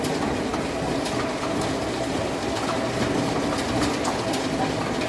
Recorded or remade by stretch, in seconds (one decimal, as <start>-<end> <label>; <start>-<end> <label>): 0.0-5.1 recorded